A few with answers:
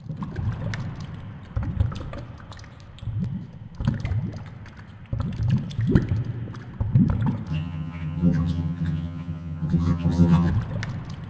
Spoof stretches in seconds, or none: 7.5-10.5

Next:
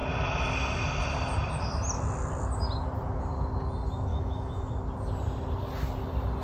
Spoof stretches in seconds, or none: 4.1-4.7

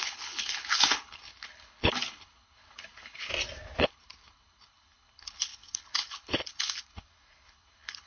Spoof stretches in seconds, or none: 0.0-3.3; 3.8-8.1

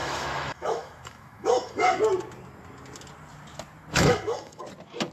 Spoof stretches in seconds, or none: 0.0-2.0; 3.9-4.6

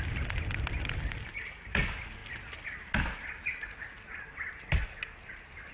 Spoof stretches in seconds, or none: none

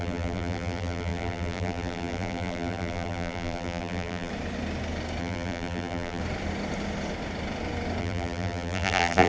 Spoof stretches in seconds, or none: 0.0-4.3; 5.2-6.2; 8.0-9.3